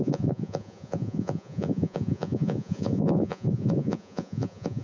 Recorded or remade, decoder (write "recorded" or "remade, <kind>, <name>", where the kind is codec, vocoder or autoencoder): remade, vocoder, Vocos